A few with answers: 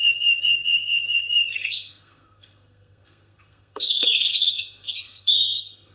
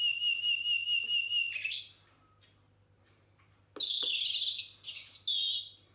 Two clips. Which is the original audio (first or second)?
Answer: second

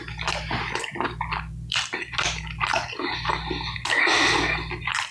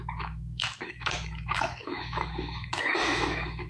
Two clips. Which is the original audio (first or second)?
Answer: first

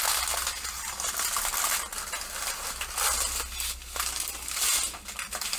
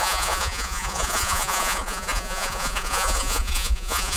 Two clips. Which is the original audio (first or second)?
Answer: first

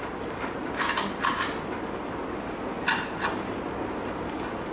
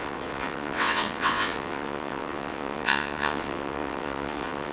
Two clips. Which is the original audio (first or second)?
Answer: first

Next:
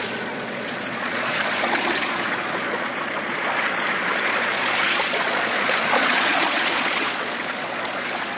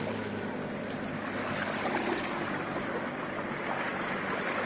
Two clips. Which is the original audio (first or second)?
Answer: second